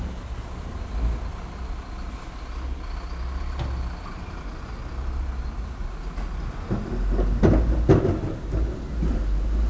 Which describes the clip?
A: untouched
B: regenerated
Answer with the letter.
A